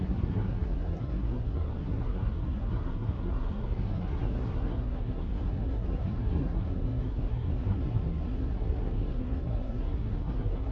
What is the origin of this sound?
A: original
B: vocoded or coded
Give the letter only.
B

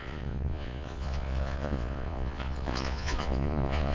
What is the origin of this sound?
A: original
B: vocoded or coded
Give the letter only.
B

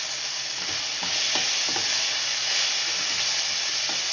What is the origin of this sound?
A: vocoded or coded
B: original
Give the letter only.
B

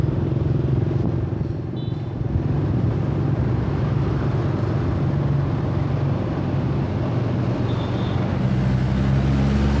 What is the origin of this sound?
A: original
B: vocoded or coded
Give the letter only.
A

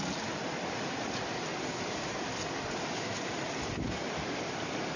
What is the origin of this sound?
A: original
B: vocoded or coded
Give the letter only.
A